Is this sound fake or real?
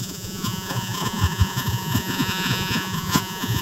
fake